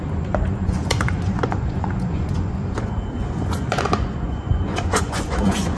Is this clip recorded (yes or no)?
no